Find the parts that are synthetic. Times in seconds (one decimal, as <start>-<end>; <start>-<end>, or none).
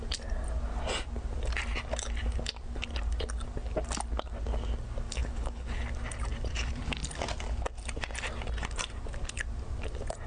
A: 5.2-5.8